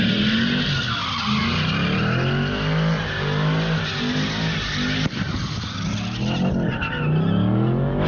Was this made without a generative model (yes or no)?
yes